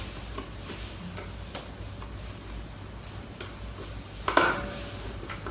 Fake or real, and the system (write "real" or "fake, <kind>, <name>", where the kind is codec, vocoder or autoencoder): real